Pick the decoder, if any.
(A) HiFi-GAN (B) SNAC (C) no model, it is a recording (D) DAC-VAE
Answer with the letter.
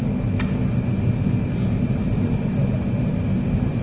C